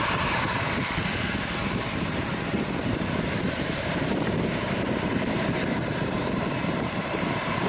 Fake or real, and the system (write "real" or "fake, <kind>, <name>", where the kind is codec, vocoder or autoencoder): fake, vocoder, BigVGAN v2